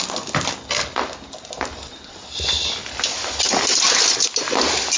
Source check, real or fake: real